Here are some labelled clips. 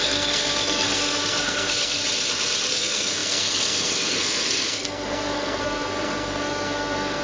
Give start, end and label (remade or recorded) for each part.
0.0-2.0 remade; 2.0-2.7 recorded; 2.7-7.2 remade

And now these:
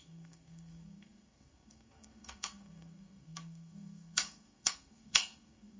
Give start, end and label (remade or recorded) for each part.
0.0-5.8 remade

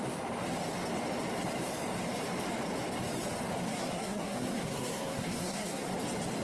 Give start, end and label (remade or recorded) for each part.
0.0-3.7 recorded; 3.7-5.9 remade; 5.9-6.4 recorded

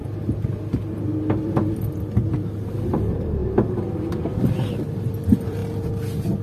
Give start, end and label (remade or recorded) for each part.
0.0-2.7 recorded; 2.7-3.4 remade; 3.4-5.1 recorded; 5.1-5.6 remade; 5.6-6.4 recorded

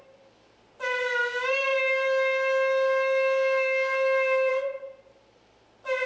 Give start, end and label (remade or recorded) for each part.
0.0-6.1 recorded